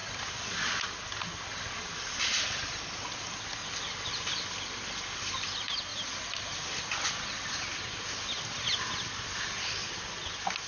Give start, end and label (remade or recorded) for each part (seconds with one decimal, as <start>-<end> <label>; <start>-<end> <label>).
0.0-10.7 recorded